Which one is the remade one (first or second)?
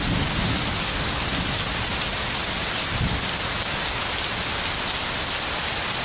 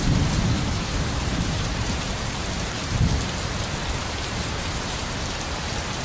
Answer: second